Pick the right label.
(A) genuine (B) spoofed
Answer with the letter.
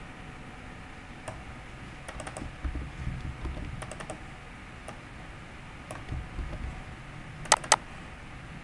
A